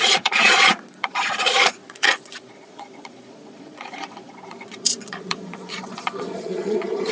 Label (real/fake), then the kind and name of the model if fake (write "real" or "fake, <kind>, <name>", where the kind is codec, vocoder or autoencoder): fake, vocoder, Vocos